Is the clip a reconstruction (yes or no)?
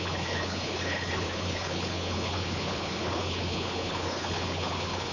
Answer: yes